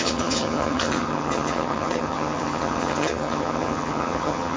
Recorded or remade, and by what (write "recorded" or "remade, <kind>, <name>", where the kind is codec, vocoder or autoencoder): remade, vocoder, HiFi-GAN